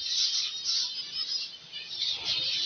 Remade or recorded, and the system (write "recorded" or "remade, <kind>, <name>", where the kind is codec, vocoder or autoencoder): recorded